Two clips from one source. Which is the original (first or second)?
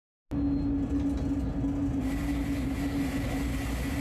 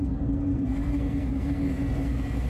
first